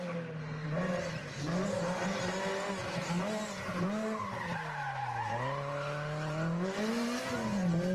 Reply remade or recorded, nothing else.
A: recorded